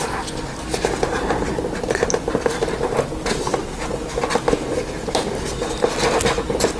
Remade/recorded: recorded